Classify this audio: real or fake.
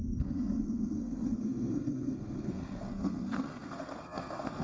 fake